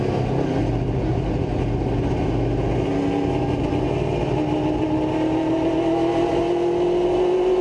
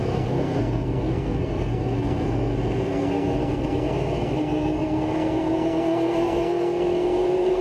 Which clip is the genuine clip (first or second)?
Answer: first